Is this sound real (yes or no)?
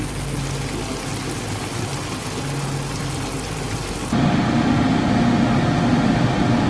yes